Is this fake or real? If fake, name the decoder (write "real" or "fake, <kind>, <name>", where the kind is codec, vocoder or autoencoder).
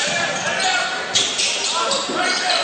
fake, vocoder, BigVGAN v2